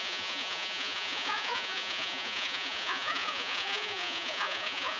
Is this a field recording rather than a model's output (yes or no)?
no